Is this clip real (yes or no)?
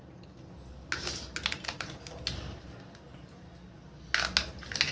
yes